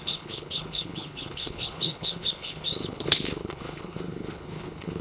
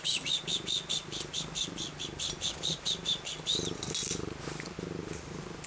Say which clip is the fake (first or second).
first